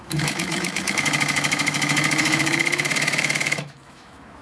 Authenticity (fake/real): fake